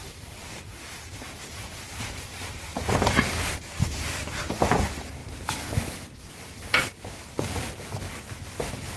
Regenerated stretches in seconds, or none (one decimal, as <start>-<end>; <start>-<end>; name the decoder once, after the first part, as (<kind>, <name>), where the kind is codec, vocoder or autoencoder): 0.0-5.2 (vocoder, BigVGAN v2); 6.3-9.0